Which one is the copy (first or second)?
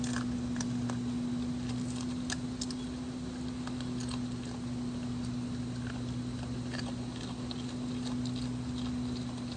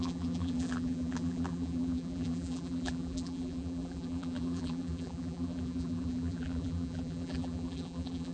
second